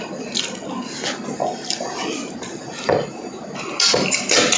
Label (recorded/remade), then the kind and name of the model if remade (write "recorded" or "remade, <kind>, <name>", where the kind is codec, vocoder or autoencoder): recorded